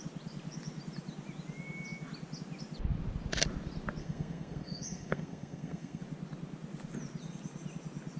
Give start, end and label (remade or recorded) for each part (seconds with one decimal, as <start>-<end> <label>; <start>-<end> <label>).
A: 0.0-4.0 recorded; 4.0-6.0 remade; 6.0-8.2 recorded